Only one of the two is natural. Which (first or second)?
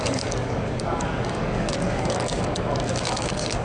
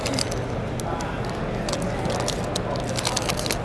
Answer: second